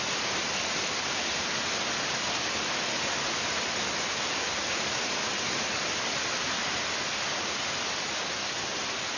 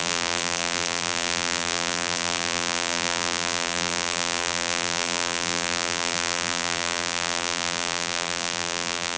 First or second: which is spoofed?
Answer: second